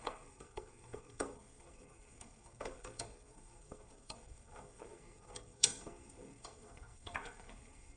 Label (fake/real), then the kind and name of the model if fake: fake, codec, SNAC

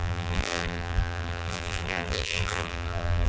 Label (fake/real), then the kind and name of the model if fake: fake, vocoder, BigVGAN v2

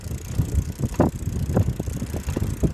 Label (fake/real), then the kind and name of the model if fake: real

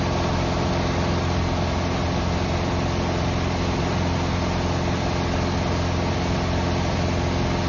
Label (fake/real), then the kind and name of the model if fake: real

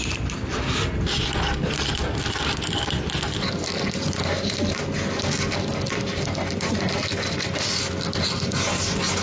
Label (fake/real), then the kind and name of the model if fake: real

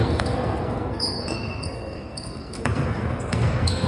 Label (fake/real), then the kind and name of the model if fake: fake, codec, SNAC